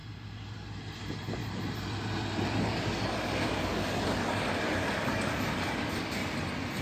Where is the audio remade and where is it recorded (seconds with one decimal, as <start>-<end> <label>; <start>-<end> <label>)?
0.0-2.6 recorded; 2.6-6.2 remade; 6.2-6.8 recorded

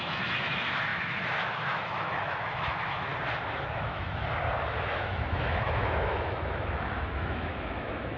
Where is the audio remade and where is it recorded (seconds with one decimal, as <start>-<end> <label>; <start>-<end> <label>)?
0.0-3.1 remade; 3.1-3.7 recorded; 3.7-4.2 remade; 4.2-4.9 recorded; 4.9-8.2 remade

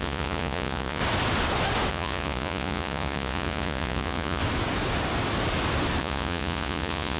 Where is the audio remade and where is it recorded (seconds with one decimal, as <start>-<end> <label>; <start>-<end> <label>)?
0.0-1.0 remade; 1.0-1.9 recorded; 1.9-4.4 remade; 4.4-6.0 recorded; 6.0-7.2 remade

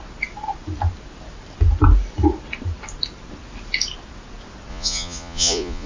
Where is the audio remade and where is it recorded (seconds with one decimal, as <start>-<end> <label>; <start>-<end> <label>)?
0.0-4.7 recorded; 4.7-5.9 remade

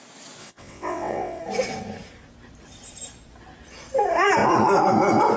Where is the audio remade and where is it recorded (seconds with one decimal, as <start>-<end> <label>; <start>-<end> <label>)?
0.0-0.4 recorded; 0.4-1.4 remade; 1.4-5.4 recorded

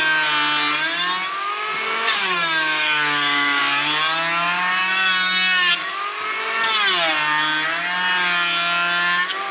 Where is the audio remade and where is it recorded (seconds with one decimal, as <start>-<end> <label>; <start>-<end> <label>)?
0.0-1.4 recorded; 1.4-3.6 remade; 3.6-4.8 recorded; 4.8-5.7 remade; 5.7-9.5 recorded

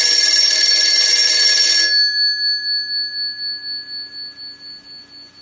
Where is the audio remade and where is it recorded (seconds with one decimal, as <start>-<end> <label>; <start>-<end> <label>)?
0.0-5.4 recorded

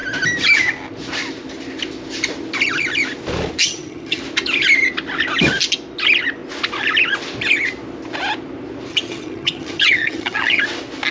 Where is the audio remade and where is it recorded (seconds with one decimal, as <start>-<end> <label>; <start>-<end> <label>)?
0.0-3.6 recorded; 3.6-4.2 remade; 4.2-8.9 recorded; 8.9-10.6 remade; 10.6-11.1 recorded